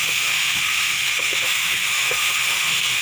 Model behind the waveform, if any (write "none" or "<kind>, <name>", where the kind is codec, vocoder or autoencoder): autoencoder, DAC-VAE